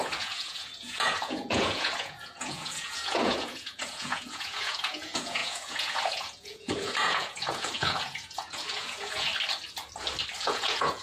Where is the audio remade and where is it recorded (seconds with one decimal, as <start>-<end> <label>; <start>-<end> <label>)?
0.0-9.3 remade; 9.3-10.4 recorded; 10.4-11.0 remade